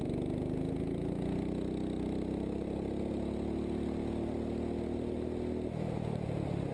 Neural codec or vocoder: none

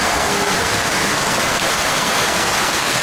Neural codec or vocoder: codec, SNAC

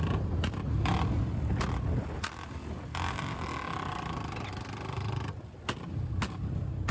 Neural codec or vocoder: none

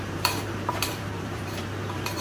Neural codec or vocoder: vocoder, BigVGAN v2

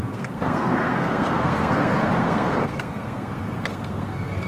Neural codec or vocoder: codec, SNAC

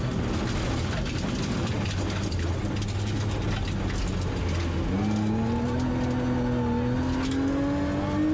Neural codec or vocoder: none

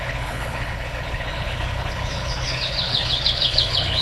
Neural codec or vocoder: codec, HILCodec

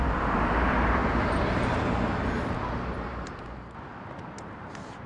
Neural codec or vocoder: none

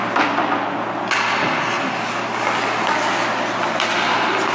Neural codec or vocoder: none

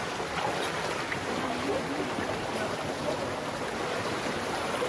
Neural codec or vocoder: none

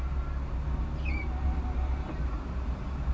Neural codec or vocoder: none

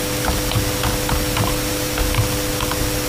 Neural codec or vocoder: none